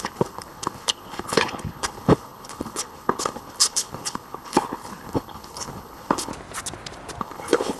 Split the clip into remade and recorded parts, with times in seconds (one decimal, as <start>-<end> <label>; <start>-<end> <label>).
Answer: 0.0-6.3 remade; 6.3-7.2 recorded; 7.2-7.8 remade